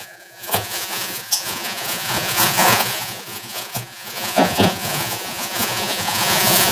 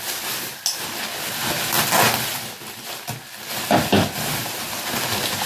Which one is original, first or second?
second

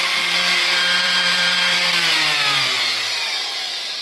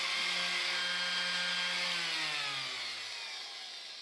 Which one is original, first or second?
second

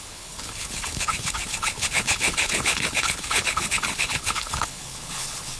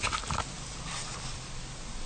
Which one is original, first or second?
second